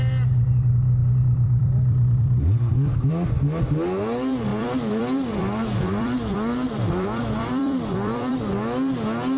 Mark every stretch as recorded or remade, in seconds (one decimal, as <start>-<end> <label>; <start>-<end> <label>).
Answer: 0.0-1.0 recorded; 1.0-3.1 remade; 3.1-4.5 recorded; 4.5-8.4 remade; 8.4-9.4 recorded